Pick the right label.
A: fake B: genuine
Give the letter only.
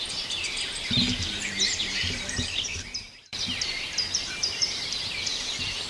A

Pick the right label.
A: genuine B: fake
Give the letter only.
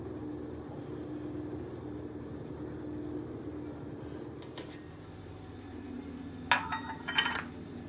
A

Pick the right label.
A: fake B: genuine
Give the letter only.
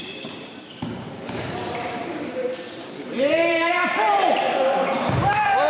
A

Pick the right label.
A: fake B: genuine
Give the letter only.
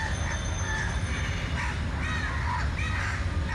B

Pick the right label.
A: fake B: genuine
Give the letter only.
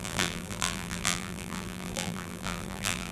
A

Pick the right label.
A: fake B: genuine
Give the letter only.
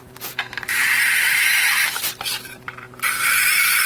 A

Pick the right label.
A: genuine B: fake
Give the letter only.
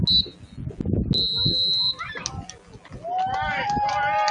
A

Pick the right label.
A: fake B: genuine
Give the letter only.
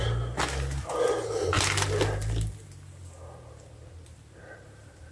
B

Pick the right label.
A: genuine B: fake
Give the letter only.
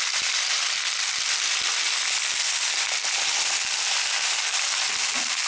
B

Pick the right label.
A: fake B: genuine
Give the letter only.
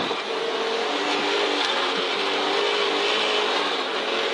B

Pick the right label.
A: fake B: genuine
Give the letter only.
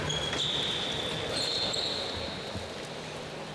B